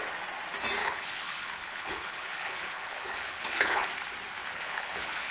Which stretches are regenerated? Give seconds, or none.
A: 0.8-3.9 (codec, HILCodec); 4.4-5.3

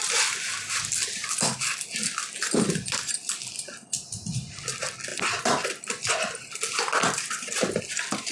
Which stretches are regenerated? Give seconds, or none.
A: none

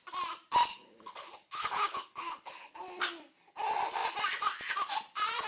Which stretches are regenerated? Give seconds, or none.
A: 0.7-2.8 (codec, HILCodec)

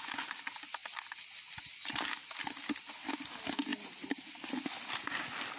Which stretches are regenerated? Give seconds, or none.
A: none

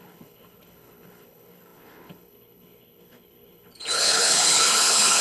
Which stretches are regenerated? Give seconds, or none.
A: 0.0-5.2 (codec, HILCodec)

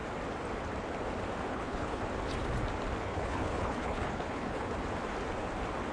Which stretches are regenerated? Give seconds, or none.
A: 1.5-2.0 (codec, HILCodec); 3.0-4.7